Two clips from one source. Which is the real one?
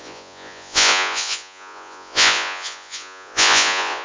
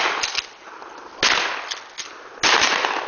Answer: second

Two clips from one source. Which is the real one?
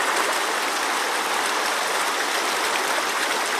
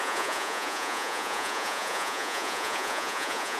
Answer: first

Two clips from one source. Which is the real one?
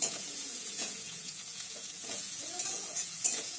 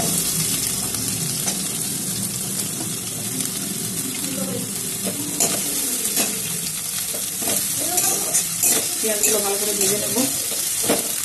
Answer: second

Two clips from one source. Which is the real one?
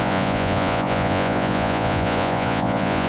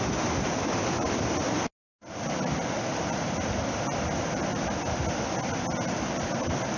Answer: second